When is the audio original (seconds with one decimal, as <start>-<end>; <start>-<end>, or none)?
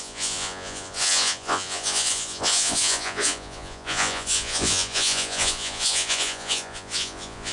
none